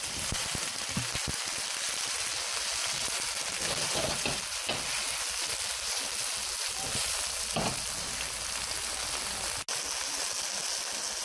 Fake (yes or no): no